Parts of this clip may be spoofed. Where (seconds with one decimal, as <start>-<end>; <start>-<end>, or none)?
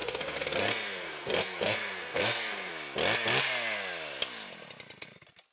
0.0-2.7